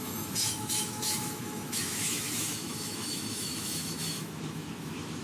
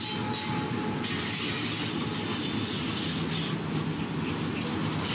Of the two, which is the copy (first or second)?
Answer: first